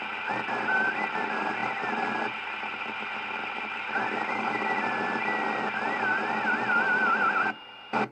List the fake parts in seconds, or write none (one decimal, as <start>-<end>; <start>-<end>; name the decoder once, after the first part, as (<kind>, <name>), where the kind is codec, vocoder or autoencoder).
none